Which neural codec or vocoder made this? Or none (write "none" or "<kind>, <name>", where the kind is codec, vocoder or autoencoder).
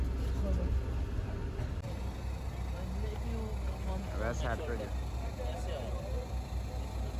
none